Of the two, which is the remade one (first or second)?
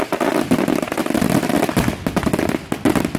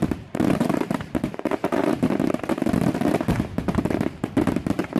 second